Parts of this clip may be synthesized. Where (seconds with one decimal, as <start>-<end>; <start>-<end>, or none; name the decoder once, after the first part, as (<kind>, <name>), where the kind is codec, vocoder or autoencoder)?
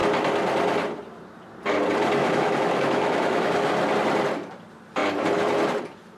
2.2-3.7 (autoencoder, DAC-VAE)